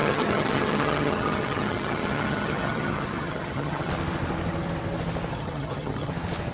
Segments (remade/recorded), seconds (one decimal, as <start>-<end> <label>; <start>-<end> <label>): 0.0-3.9 remade; 3.9-5.3 recorded; 5.3-6.1 remade; 6.1-6.5 recorded

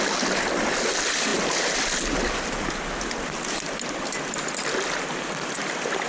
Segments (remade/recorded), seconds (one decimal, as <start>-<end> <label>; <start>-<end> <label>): 0.0-6.1 recorded

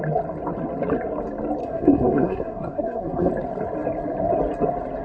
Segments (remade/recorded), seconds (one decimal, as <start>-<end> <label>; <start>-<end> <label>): 0.0-1.6 recorded; 1.6-3.3 remade; 3.3-5.0 recorded

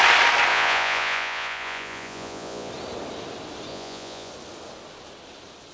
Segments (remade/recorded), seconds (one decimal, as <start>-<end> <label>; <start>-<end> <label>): 0.0-0.5 recorded; 0.5-2.7 remade; 2.7-3.7 recorded; 3.7-4.3 remade; 4.3-5.7 recorded

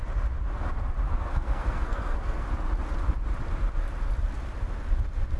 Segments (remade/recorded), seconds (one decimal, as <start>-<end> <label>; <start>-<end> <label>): 0.0-1.1 recorded; 1.1-2.5 remade; 2.5-5.4 recorded

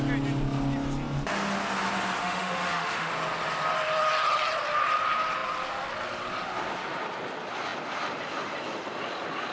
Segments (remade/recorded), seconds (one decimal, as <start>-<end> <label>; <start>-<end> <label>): 0.0-2.2 recorded; 2.2-3.1 remade; 3.1-9.5 recorded

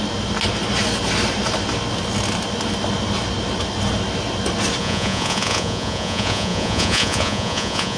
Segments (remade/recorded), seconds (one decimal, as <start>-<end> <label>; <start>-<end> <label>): 0.0-4.8 recorded; 4.8-8.0 remade